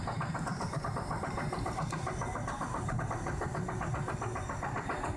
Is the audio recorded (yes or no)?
yes